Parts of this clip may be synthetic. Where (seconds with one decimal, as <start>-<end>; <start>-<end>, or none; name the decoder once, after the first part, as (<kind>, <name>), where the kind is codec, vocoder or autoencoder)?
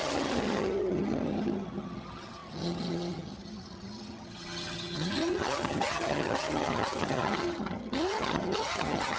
0.0-9.2 (vocoder, HiFi-GAN)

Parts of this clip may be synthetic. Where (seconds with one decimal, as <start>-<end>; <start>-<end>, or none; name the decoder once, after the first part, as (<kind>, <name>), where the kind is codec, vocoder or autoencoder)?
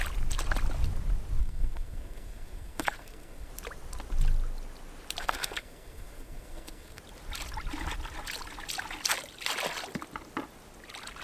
1.4-3.5 (codec, SNAC); 5.2-7.0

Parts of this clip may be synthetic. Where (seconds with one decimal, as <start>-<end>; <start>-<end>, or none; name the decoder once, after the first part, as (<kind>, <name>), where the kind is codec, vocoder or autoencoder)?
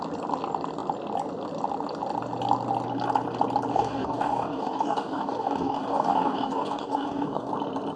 3.7-7.5 (codec, DAC)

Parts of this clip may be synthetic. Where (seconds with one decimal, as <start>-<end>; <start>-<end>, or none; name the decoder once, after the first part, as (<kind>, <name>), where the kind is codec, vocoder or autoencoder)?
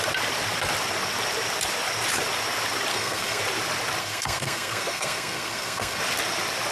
2.9-3.4 (codec, SNAC); 4.0-6.0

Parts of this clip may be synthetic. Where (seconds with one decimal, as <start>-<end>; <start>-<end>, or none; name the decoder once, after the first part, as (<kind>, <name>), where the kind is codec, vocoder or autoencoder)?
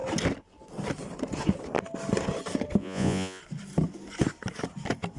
2.8-3.4 (vocoder, Vocos)